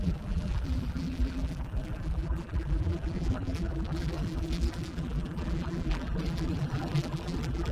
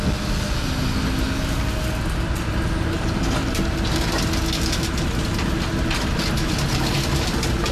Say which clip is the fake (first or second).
first